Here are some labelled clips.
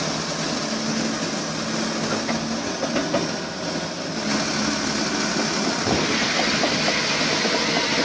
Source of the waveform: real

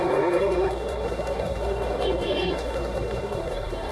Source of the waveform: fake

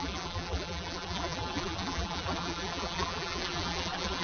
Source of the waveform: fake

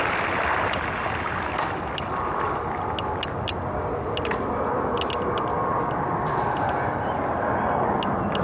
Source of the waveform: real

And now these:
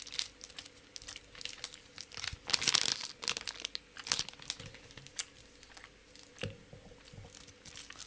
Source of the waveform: real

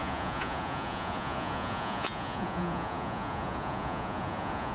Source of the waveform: fake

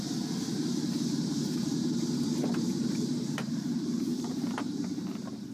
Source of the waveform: fake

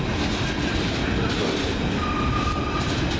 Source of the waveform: real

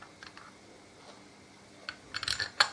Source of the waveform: real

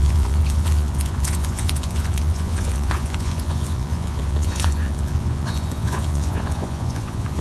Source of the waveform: fake